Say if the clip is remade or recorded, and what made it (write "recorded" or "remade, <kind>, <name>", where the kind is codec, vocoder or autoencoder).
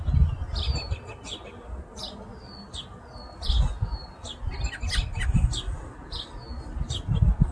recorded